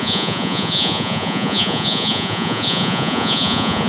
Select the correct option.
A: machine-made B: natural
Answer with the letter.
A